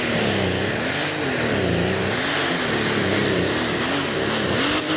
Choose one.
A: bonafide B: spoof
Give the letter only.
A